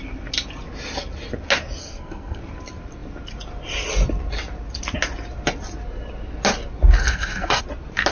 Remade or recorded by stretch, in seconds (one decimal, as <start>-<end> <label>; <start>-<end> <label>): 0.0-1.8 recorded; 1.8-2.4 remade; 2.4-7.0 recorded; 7.0-7.6 remade; 7.6-8.1 recorded